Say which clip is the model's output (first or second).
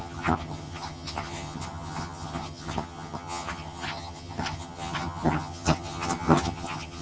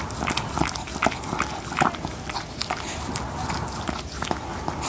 first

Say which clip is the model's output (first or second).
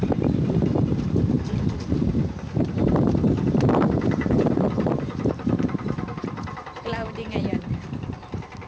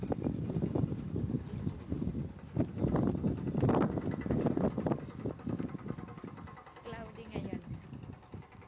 first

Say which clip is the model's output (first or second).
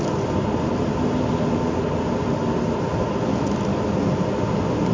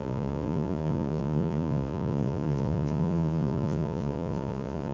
second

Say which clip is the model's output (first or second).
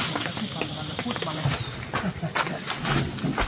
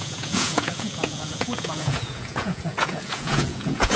second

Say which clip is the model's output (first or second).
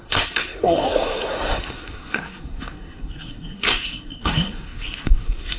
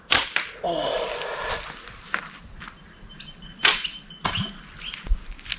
first